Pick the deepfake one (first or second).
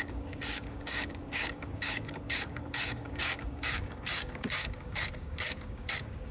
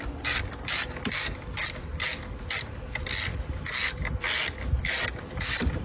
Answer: first